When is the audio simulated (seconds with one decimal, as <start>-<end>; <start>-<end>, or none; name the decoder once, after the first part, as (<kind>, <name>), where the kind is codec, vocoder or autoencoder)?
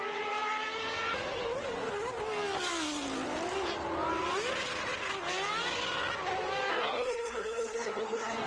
6.7-8.5 (codec, SNAC)